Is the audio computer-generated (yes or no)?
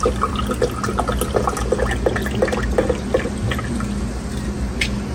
no